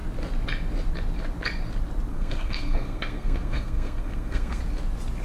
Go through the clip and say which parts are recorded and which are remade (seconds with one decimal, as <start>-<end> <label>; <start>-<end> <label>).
0.0-2.1 recorded; 2.1-4.6 remade; 4.6-5.2 recorded